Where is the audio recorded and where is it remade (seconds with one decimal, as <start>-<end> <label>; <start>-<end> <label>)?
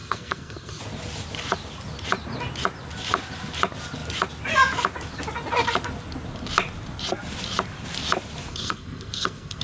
0.0-0.8 remade; 0.8-8.5 recorded; 8.5-9.6 remade